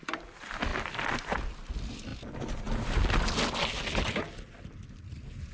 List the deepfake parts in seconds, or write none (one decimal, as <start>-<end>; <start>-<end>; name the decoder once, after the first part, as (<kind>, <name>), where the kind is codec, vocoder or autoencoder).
none